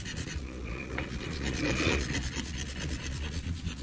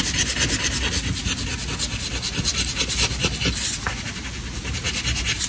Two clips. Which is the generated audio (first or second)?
first